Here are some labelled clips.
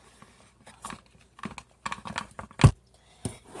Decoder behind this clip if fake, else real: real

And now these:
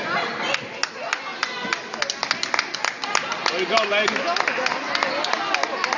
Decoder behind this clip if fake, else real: real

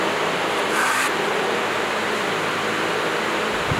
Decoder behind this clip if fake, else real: real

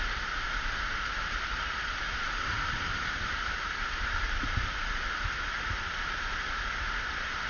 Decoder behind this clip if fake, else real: fake, vocoder, BigVGAN v2